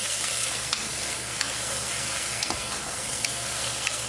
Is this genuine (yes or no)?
no